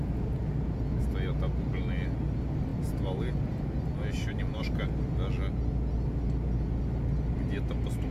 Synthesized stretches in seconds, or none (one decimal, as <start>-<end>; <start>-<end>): none